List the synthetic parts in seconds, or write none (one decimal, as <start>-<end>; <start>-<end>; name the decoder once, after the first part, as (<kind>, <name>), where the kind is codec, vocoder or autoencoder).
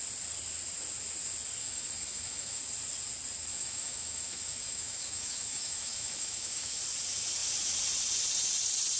1.6-2.6 (autoencoder, DAC-VAE); 3.5-6.8